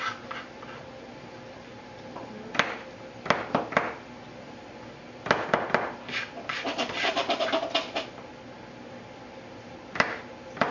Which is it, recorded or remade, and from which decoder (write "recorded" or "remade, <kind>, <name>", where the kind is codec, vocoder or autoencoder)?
recorded